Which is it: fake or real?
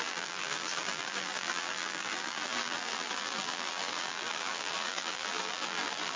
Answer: fake